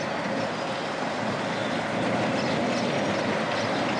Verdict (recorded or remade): recorded